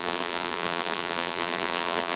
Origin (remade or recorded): remade